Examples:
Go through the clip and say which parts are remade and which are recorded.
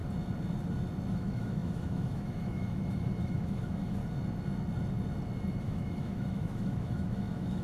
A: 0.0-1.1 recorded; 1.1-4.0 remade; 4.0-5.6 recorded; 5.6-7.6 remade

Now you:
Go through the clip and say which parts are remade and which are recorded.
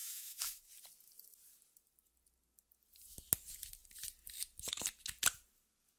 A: 0.0-0.6 remade; 0.6-6.0 recorded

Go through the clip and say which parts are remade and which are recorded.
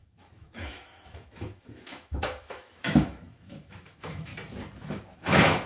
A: 0.0-4.3 remade; 4.3-4.8 recorded; 4.8-5.7 remade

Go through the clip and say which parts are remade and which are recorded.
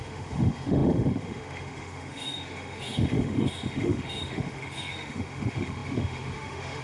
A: 0.0-6.8 remade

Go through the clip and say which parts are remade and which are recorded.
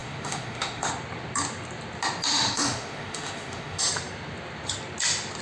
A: 0.0-0.9 remade; 0.9-2.3 recorded; 2.3-3.8 remade; 3.8-5.4 recorded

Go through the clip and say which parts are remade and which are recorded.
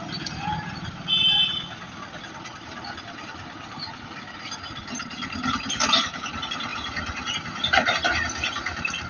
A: 0.0-9.1 recorded